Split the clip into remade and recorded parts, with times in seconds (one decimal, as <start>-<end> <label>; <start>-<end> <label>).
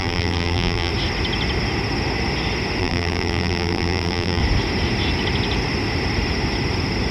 0.0-0.9 remade; 0.9-2.8 recorded; 2.8-4.4 remade; 4.4-7.1 recorded